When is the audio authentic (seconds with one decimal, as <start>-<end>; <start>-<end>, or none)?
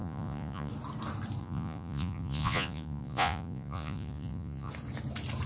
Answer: 0.7-1.4; 4.7-5.5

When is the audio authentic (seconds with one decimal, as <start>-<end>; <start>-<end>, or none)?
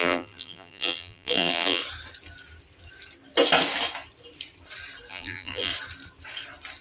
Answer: 1.8-5.1; 5.7-6.8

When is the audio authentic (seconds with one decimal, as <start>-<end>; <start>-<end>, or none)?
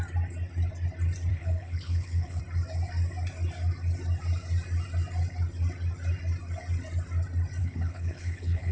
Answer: 0.0-1.3; 2.4-7.6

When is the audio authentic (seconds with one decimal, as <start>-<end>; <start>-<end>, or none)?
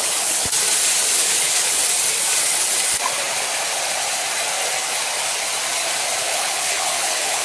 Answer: 0.6-1.2; 1.8-6.2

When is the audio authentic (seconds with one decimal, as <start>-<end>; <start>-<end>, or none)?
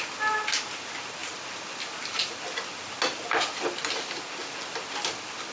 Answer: 0.0-5.5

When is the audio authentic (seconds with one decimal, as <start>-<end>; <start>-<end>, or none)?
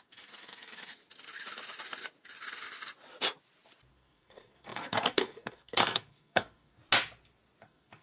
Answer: 1.0-3.9; 6.8-7.6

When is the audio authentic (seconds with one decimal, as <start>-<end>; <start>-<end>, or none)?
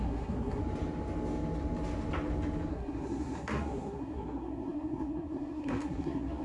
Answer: 0.6-2.7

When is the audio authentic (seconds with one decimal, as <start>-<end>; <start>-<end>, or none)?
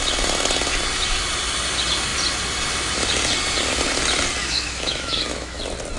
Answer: 0.0-4.4; 5.6-6.0